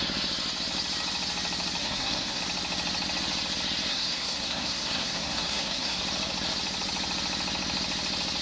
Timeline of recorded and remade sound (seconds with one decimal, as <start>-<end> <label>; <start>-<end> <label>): 0.0-1.8 recorded; 1.8-2.4 remade; 2.4-3.9 recorded; 3.9-6.0 remade; 6.0-8.4 recorded